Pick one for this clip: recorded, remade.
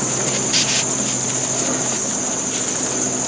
recorded